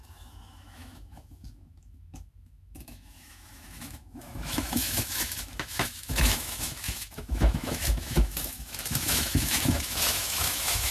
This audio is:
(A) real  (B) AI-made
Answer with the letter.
B